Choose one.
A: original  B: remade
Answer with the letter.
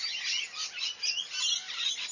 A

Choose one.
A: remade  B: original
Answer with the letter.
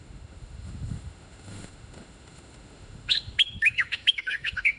A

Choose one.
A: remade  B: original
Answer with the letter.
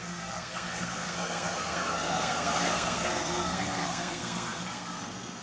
A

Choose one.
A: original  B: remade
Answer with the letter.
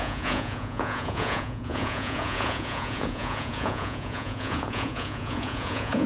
B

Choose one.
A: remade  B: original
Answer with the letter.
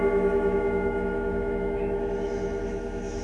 A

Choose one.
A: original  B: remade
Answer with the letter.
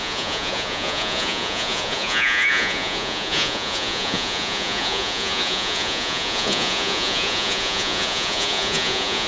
B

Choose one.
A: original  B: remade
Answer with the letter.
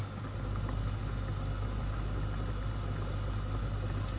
A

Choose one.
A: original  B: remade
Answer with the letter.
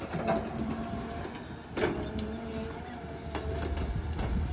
A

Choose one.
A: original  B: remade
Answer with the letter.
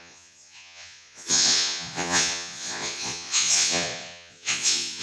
B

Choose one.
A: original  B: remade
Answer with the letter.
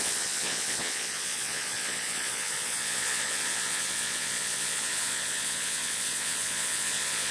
B